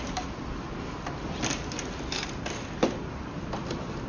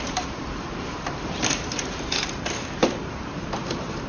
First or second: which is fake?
second